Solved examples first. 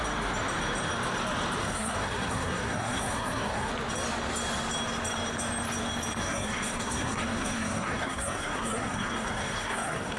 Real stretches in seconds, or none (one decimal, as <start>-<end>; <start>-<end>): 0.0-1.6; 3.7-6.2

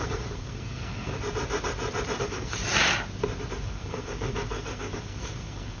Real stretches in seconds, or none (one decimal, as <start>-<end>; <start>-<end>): 1.1-2.2; 2.6-3.6

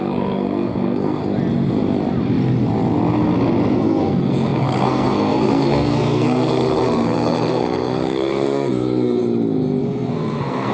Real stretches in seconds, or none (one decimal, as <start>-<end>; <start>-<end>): 1.2-3.7; 9.2-9.8

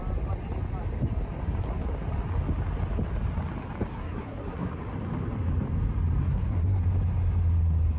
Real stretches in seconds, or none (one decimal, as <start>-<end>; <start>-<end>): 0.0-3.9; 4.7-6.2; 6.8-8.0